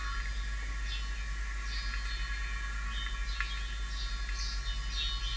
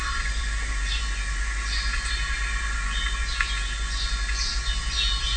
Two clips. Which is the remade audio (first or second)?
second